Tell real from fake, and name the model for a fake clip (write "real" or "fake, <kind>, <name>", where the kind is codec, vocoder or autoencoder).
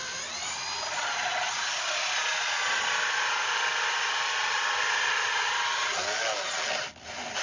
real